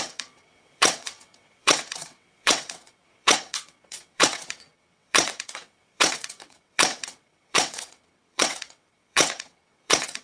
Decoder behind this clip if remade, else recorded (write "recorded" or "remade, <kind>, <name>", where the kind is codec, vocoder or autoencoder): remade, vocoder, WaveNeXt